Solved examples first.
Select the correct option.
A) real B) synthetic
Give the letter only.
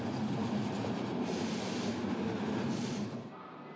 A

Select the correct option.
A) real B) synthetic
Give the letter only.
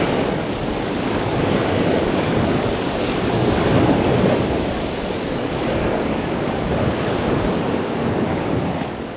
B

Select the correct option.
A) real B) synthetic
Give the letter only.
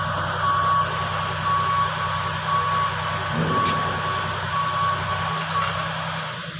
A